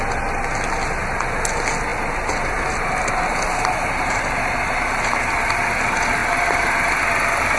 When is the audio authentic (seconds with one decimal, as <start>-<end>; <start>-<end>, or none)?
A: 0.0-7.6